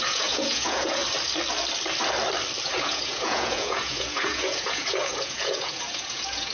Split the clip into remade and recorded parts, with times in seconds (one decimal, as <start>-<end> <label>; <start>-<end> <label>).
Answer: 0.0-1.0 remade; 1.0-2.7 recorded; 2.7-6.5 remade